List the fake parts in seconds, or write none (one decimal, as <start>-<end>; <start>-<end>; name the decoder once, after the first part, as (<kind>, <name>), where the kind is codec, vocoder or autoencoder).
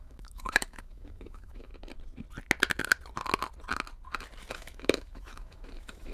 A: 0.0-1.7 (autoencoder, DAC-VAE); 4.5-6.1